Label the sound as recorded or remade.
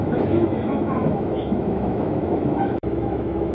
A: remade